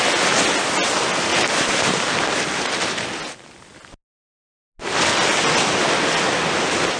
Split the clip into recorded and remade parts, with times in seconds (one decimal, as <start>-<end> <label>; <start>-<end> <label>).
0.0-7.0 recorded